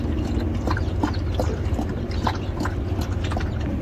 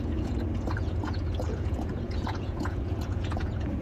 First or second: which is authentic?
first